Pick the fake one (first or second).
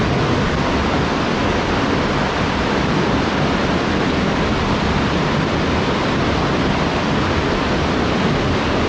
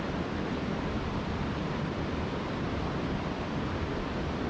second